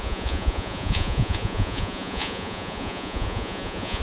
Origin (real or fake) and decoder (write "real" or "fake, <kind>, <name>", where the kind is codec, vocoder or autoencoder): fake, vocoder, Vocos